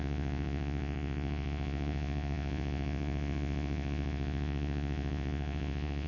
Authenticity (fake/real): fake